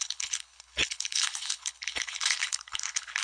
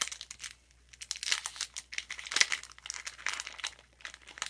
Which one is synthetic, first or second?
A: first